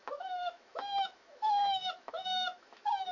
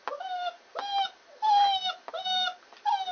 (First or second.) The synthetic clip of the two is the first